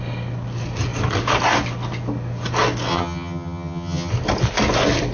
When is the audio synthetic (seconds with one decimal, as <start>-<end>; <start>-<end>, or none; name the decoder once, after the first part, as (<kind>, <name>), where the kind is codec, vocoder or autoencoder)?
2.9-4.1 (vocoder, HiFi-GAN)